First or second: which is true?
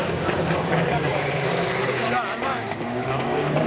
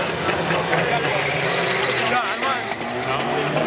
second